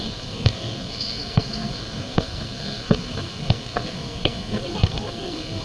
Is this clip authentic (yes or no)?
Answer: no